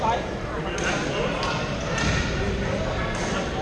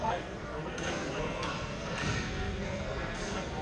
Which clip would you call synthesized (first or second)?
second